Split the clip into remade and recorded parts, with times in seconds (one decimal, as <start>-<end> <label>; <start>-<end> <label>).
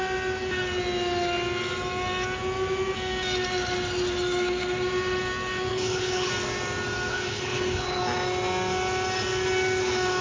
0.0-5.7 recorded; 5.7-6.3 remade; 6.3-7.1 recorded; 7.1-8.0 remade; 8.0-10.2 recorded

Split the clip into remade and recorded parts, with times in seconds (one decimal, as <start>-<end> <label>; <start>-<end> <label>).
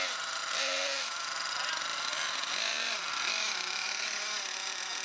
0.0-5.0 recorded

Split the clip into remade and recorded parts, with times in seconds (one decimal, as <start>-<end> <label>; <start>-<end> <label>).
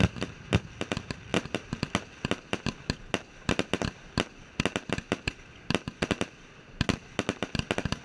0.0-8.0 recorded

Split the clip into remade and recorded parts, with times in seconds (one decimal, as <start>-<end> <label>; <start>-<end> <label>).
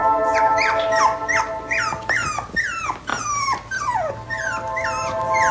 0.0-1.4 remade; 1.4-5.5 recorded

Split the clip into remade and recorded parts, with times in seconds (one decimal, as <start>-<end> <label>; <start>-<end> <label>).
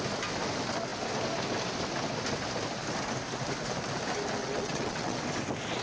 0.0-4.4 recorded; 4.4-5.2 remade; 5.2-5.8 recorded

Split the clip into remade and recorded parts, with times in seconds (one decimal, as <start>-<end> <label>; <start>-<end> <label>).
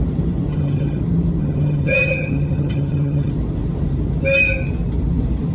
0.0-0.5 recorded; 0.5-1.0 remade; 1.0-1.4 recorded; 1.4-3.3 remade; 3.3-5.5 recorded